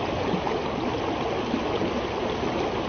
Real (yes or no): yes